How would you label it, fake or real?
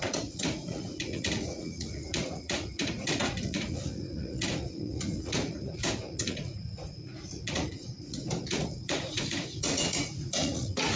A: fake